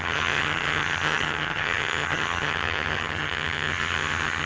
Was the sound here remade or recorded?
remade